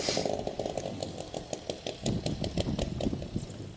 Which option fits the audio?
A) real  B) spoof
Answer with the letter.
A